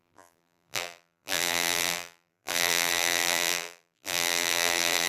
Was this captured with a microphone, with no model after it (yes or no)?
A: no